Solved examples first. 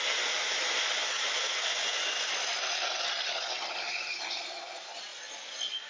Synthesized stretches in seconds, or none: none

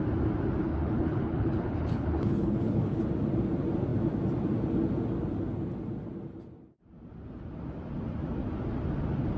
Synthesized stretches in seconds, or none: 0.6-3.0